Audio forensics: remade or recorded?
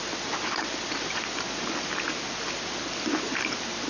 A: recorded